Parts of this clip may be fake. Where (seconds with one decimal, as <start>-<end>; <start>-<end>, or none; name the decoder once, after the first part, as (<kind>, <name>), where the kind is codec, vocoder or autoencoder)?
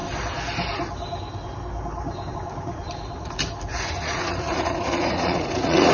3.7-5.9 (vocoder, Vocos)